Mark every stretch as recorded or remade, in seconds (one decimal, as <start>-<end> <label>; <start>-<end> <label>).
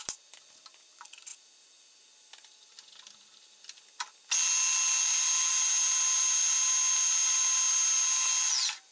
0.0-8.9 recorded